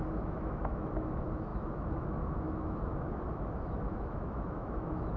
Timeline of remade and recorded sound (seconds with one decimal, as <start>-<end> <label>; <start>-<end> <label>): 0.0-5.2 remade